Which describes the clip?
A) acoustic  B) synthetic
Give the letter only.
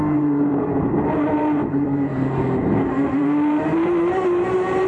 B